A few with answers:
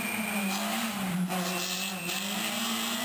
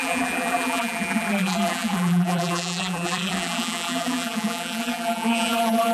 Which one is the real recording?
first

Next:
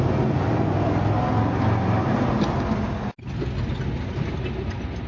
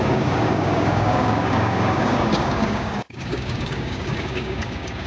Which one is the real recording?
first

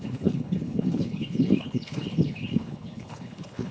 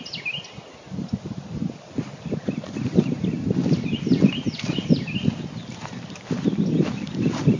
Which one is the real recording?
second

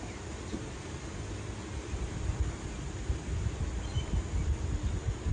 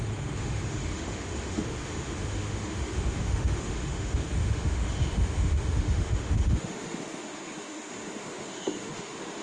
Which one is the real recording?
first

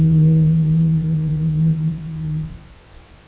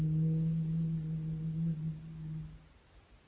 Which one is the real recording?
second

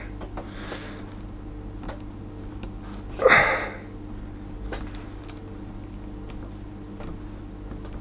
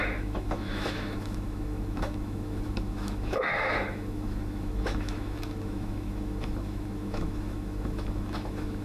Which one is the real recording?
first